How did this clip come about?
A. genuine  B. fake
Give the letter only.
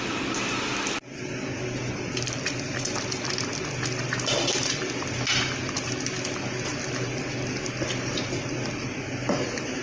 A